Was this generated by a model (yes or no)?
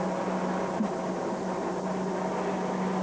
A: no